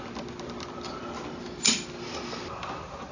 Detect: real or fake real